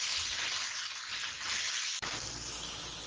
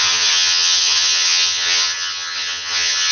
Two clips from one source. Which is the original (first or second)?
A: first